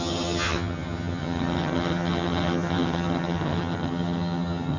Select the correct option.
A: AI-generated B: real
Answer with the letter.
A